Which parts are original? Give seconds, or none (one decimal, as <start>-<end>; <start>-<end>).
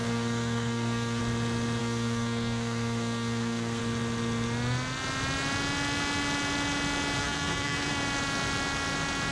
1.2-1.8; 3.8-7.2; 7.9-9.3